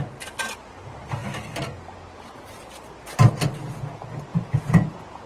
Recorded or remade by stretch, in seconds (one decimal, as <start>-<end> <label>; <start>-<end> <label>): 0.0-4.3 recorded; 4.3-5.3 remade